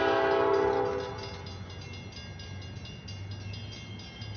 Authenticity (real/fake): real